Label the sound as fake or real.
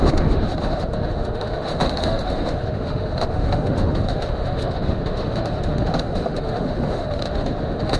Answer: fake